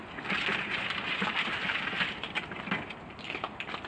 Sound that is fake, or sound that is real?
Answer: real